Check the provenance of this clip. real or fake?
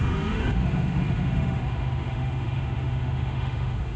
fake